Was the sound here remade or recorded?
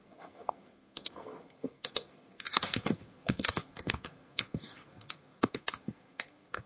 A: remade